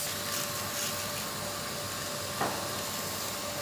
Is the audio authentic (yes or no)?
yes